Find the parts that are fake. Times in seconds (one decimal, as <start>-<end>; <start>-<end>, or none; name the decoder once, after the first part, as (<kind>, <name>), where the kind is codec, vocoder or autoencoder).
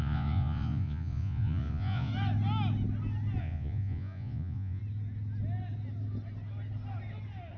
0.0-2.1 (vocoder, Vocos); 3.4-4.8